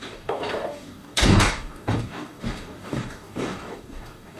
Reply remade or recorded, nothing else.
remade